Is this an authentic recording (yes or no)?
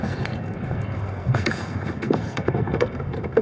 no